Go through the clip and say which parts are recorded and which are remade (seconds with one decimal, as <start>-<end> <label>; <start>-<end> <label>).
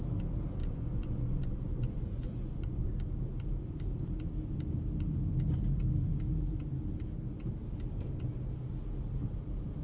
0.0-0.6 recorded; 0.6-2.9 remade; 2.9-9.8 recorded